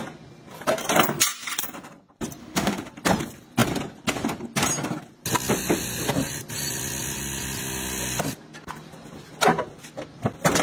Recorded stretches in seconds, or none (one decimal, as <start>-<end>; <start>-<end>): 0.0-2.4; 2.9-10.6